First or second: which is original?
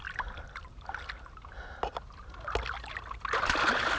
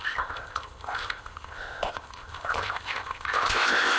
first